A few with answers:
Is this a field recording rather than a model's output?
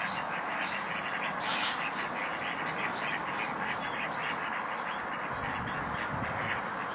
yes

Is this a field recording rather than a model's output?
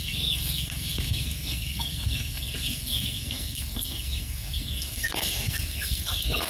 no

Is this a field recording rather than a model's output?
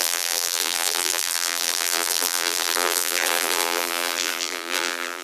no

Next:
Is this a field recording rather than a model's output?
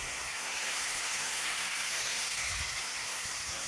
no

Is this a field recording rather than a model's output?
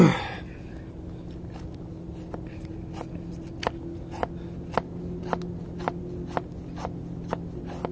yes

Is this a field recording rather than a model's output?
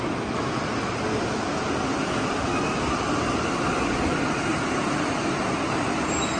yes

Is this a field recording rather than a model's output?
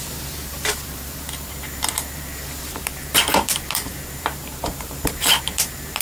no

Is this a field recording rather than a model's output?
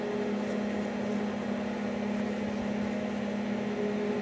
yes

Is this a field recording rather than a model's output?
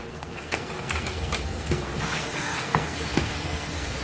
no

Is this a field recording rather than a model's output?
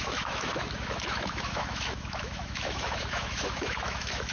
no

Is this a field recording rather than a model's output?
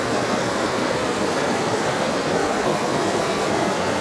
no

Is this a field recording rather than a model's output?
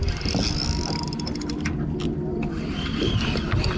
yes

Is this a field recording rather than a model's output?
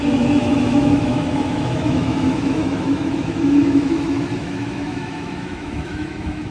no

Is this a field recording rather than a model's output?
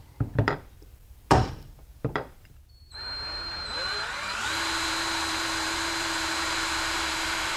no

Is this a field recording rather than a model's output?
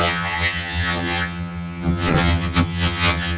no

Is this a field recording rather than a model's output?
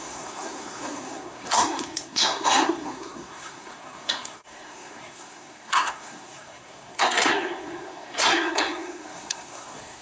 no